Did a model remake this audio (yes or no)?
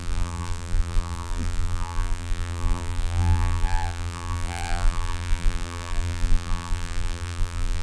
yes